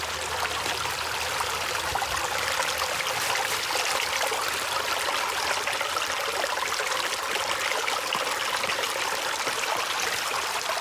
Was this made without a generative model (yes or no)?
yes